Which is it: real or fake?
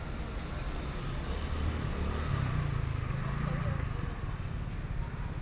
real